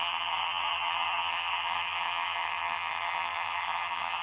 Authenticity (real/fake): fake